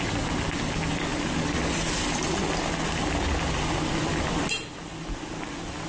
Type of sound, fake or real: real